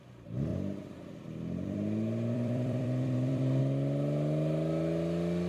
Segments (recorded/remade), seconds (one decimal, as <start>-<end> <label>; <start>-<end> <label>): 0.0-0.5 recorded; 0.5-3.6 remade; 3.6-5.5 recorded